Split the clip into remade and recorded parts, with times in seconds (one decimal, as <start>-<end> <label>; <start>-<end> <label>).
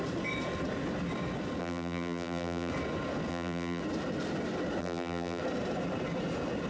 0.0-1.6 recorded; 1.6-2.7 remade; 2.7-3.3 recorded; 3.3-3.8 remade; 3.8-4.8 recorded; 4.8-5.4 remade; 5.4-6.7 recorded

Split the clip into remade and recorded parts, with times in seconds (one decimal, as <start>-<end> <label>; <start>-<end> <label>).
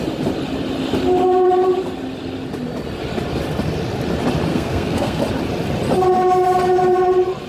0.0-4.5 recorded; 4.5-5.2 remade; 5.2-7.5 recorded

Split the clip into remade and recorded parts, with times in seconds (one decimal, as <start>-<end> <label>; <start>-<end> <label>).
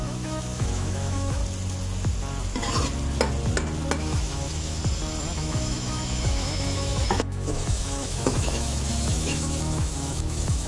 0.0-1.4 remade; 1.4-4.0 recorded; 4.0-4.8 remade; 4.8-5.4 recorded; 5.4-10.7 remade